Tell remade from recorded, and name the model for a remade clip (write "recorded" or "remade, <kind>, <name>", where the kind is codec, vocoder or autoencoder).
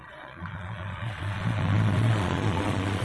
remade, vocoder, Vocos